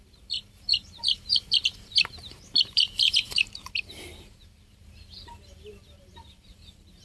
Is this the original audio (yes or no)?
no